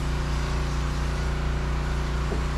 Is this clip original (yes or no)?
yes